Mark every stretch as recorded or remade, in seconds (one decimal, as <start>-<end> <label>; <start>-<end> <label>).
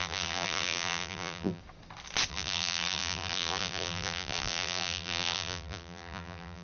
0.0-1.6 remade; 1.6-2.3 recorded; 2.3-6.6 remade